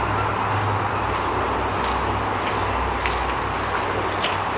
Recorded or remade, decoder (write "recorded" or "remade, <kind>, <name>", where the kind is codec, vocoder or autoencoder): recorded